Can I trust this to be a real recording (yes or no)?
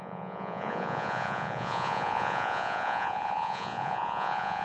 no